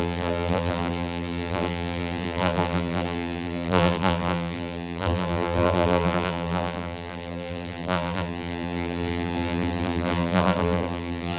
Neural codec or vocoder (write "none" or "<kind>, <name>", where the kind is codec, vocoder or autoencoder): vocoder, BigVGAN v2